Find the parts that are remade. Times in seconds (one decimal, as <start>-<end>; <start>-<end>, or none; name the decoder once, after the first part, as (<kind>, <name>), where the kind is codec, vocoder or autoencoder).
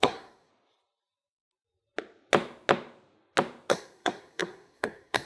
0.0-0.5 (codec, SNAC); 3.7-5.3